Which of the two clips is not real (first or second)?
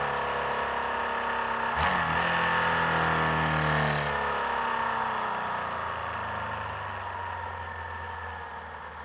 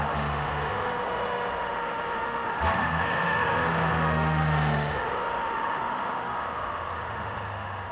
second